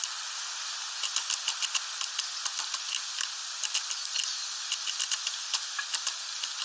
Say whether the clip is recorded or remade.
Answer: recorded